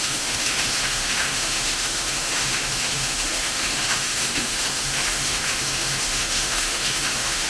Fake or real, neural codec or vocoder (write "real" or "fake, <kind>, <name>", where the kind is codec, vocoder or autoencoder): fake, autoencoder, DAC-VAE